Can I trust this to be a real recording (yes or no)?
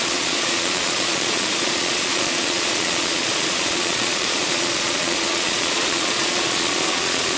no